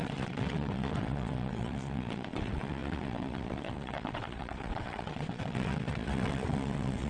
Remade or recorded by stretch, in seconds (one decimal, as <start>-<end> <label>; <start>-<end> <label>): 0.0-7.1 remade